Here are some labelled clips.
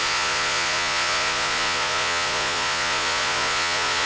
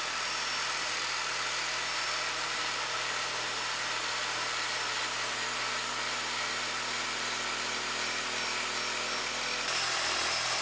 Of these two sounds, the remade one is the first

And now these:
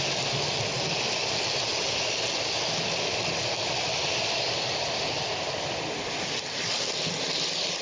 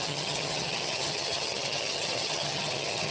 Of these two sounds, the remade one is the second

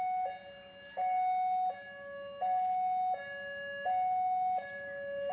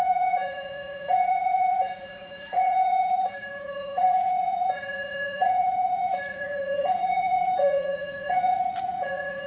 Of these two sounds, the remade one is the second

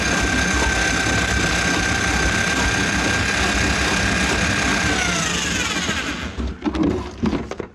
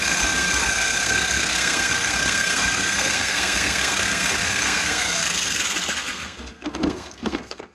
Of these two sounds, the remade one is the second